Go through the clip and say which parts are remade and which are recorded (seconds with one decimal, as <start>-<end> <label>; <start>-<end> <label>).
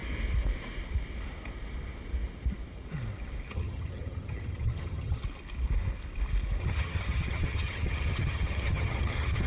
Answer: 0.0-3.5 recorded; 3.5-5.2 remade; 5.2-6.6 recorded; 6.6-9.5 remade